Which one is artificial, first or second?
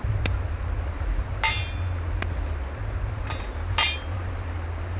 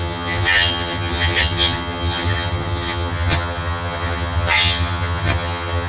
second